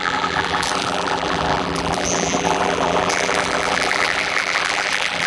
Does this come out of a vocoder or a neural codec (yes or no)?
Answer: yes